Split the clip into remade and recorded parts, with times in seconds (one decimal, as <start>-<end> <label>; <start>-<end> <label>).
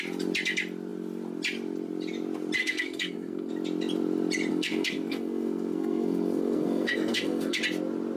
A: 0.0-2.6 recorded; 2.6-3.5 remade; 3.5-4.5 recorded; 4.5-7.6 remade; 7.6-8.2 recorded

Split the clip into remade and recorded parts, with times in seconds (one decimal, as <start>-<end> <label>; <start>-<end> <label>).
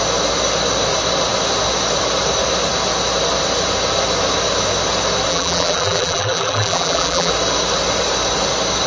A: 0.0-5.3 recorded; 5.3-7.3 remade; 7.3-8.9 recorded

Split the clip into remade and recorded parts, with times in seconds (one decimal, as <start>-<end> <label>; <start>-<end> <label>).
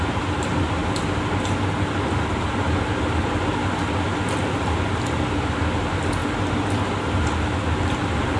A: 0.0-8.4 recorded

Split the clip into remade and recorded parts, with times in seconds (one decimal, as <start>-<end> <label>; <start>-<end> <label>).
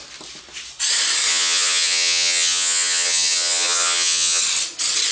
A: 0.0-1.3 recorded; 1.3-4.4 remade; 4.4-5.1 recorded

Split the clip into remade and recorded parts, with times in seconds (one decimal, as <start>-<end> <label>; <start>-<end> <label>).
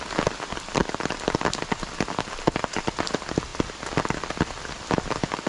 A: 0.0-5.5 recorded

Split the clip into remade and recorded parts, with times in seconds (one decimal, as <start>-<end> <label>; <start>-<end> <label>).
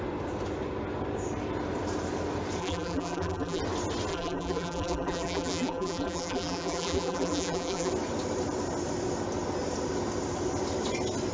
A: 0.0-2.6 recorded; 2.6-3.6 remade; 3.6-4.1 recorded; 4.1-7.9 remade; 7.9-11.3 recorded